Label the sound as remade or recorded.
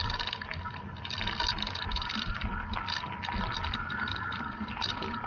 recorded